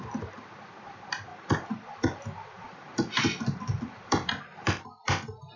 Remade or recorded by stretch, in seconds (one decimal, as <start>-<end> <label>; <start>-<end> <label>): 0.0-1.3 recorded; 1.3-4.7 remade; 4.7-5.6 recorded